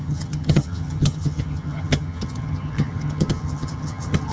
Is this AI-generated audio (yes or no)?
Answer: yes